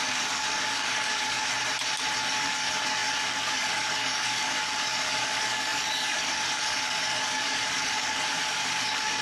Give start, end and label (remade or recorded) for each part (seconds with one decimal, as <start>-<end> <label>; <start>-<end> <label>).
0.0-1.5 remade; 1.5-2.2 recorded; 2.2-9.2 remade